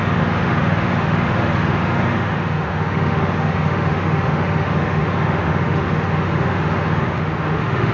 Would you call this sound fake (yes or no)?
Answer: yes